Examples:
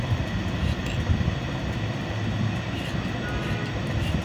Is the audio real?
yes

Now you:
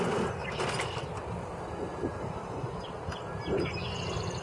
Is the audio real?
yes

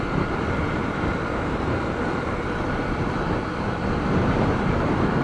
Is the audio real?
no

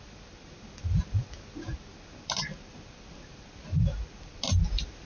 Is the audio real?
yes